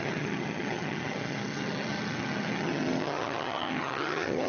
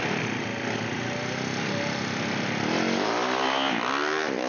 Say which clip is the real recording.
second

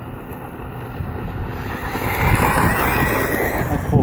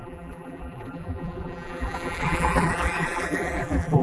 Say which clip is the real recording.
first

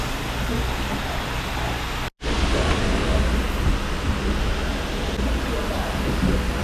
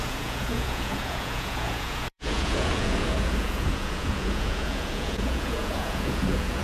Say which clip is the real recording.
first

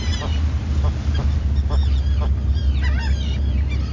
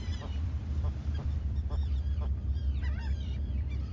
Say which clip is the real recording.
first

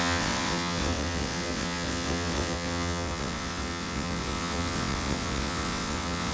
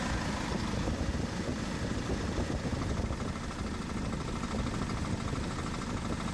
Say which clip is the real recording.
second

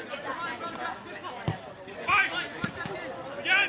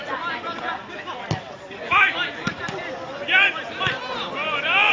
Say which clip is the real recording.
first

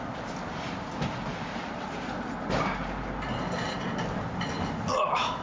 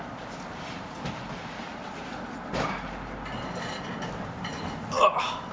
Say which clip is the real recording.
first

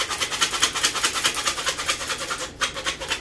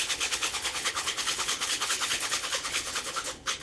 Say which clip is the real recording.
first